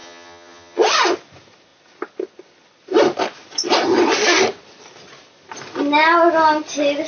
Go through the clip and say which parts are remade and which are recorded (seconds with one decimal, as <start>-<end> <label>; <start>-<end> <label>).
0.0-0.8 remade; 0.8-7.1 recorded

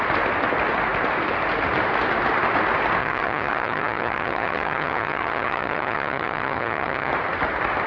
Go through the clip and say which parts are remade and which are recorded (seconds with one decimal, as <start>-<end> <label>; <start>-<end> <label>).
0.0-3.0 recorded; 3.0-7.1 remade; 7.1-7.9 recorded